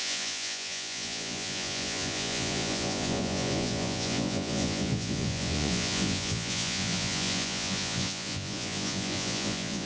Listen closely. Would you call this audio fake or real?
fake